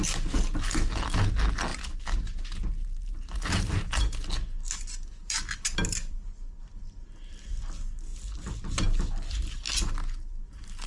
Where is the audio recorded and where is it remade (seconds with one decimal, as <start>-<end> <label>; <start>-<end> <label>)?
0.0-1.7 recorded; 1.7-4.0 remade; 4.0-5.2 recorded; 5.2-7.1 remade; 7.1-10.9 recorded